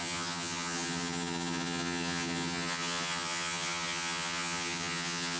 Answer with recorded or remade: remade